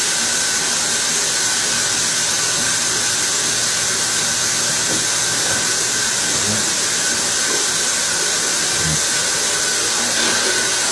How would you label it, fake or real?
real